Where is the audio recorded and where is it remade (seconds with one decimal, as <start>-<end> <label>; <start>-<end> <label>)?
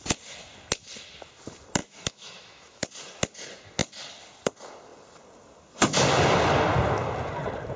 0.0-1.8 recorded; 1.8-2.9 remade; 2.9-7.8 recorded